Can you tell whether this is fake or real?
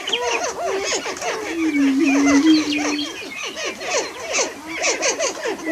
real